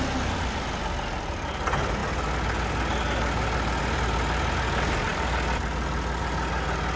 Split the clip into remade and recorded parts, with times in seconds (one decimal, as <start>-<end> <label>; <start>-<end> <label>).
0.0-7.0 recorded